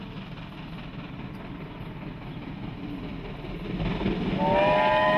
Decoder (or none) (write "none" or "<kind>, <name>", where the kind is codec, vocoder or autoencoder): none